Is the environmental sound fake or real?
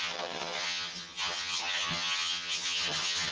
fake